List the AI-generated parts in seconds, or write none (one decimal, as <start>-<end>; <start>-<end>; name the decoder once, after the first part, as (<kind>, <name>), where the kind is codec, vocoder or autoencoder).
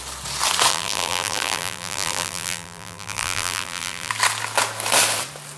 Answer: 0.7-4.1 (vocoder, BigVGAN v2)